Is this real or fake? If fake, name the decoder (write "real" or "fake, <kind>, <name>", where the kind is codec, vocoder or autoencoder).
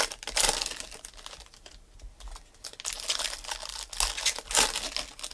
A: real